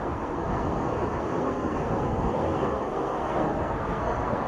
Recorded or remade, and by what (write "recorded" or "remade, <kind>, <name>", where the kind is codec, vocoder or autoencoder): remade, codec, SNAC